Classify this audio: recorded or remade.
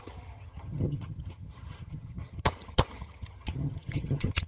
remade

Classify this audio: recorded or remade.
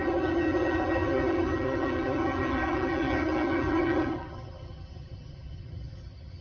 remade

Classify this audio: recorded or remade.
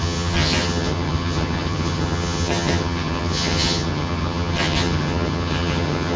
remade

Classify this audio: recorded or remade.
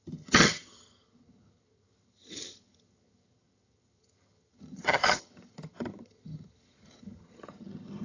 remade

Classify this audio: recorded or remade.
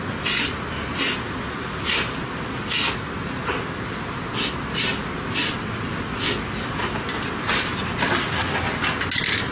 recorded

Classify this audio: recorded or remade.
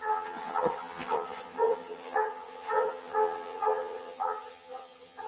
remade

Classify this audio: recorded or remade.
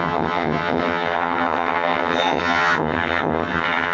remade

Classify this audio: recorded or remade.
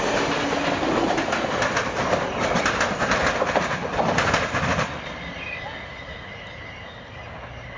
recorded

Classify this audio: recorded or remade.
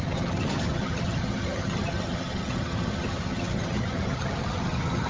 remade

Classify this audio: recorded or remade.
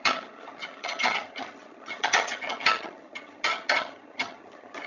remade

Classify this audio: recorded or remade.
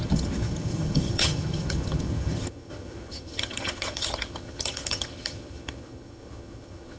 remade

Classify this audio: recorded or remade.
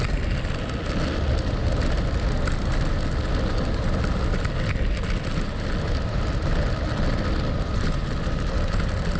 recorded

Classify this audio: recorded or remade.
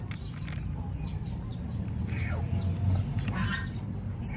recorded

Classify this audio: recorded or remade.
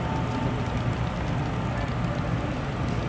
recorded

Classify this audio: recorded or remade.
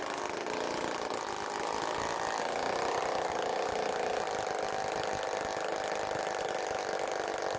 recorded